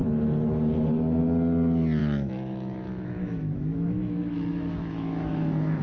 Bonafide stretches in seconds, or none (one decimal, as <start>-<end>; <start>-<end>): 0.0-2.0